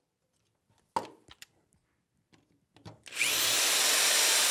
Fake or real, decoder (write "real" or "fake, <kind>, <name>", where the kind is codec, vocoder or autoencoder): real